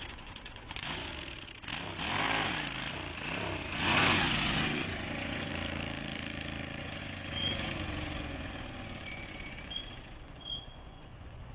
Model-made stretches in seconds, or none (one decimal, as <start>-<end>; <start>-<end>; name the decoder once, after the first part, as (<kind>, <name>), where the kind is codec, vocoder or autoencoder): 0.0-1.1 (vocoder, Vocos); 3.6-5.5; 6.8-11.5